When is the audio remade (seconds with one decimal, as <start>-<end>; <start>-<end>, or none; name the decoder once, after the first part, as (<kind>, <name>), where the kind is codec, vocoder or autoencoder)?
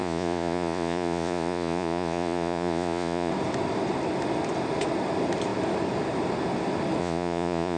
0.0-3.3 (vocoder, Vocos); 7.0-7.8